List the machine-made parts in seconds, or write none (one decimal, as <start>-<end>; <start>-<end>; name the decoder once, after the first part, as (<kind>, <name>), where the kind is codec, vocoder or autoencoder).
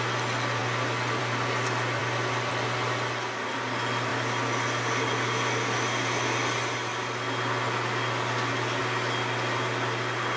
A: none